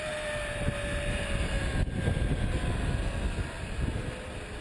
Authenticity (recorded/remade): recorded